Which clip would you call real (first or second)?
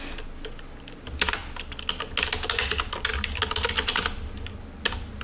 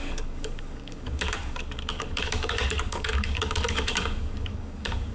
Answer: first